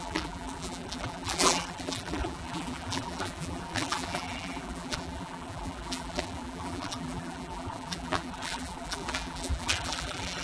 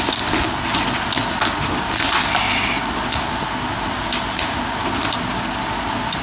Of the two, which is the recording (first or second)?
second